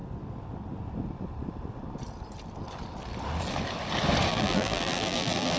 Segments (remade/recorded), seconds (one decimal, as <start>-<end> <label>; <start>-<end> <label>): 0.0-4.3 recorded; 4.3-5.6 remade